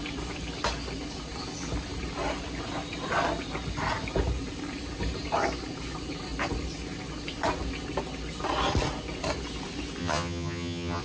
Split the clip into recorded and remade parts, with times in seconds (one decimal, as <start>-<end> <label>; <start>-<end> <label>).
0.0-10.0 recorded; 10.0-11.0 remade